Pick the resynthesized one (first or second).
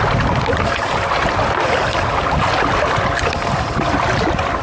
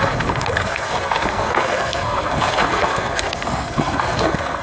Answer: second